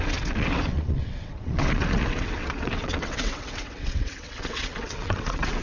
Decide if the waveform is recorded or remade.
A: remade